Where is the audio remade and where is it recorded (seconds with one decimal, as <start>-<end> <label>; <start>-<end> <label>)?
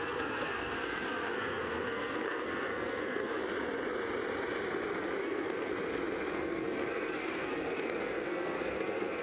0.0-3.4 remade; 3.4-5.2 recorded; 5.2-5.7 remade; 5.7-6.3 recorded; 6.3-9.2 remade